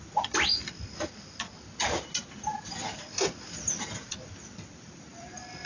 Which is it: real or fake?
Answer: real